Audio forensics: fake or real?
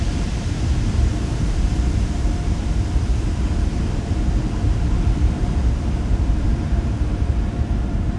fake